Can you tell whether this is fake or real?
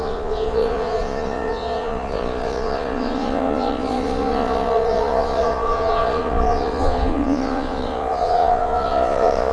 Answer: fake